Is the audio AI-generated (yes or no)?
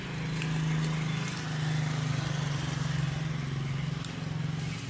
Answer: no